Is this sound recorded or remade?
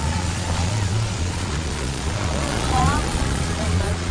remade